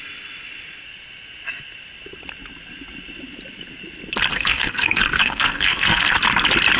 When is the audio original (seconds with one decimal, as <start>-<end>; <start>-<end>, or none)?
0.0-4.3; 6.2-6.8

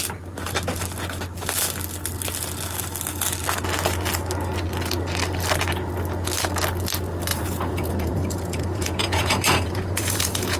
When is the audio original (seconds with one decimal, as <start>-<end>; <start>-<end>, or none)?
0.0-7.3

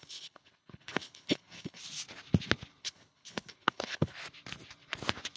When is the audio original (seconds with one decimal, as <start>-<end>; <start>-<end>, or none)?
1.8-2.8; 4.2-5.4

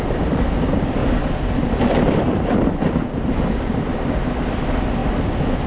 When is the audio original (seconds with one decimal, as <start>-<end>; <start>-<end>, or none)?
0.0-1.0; 3.8-5.7

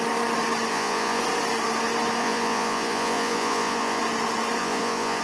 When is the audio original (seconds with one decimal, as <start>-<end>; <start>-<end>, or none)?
0.0-0.7; 1.2-2.2; 4.0-4.6